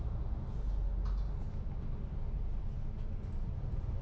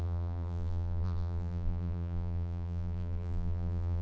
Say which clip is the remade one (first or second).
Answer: second